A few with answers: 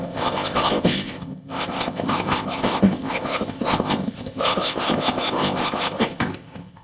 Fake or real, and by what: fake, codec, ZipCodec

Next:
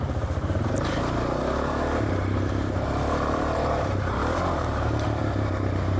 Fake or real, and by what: fake, vocoder, BigVGAN v2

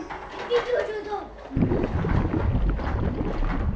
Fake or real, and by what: real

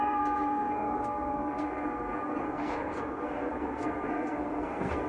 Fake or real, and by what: fake, codec, SNAC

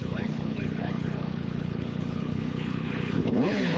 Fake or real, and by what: fake, codec, HILCodec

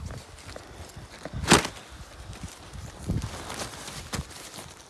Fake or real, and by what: real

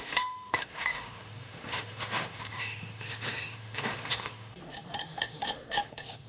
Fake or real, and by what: fake, autoencoder, DAC-VAE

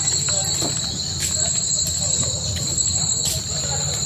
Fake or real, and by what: fake, vocoder, BigVGAN v2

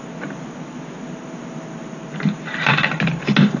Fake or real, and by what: real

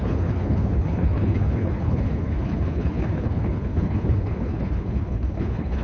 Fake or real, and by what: fake, codec, HILCodec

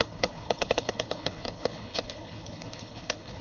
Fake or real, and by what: fake, codec, HILCodec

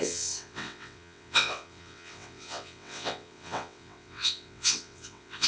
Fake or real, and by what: fake, vocoder, WaveNeXt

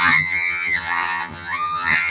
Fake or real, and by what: fake, vocoder, HiFi-GAN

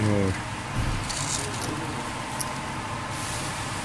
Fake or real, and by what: real